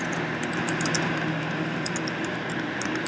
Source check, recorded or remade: recorded